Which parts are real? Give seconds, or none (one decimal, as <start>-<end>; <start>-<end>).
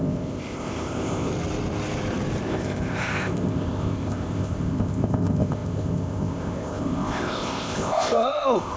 1.3-2.4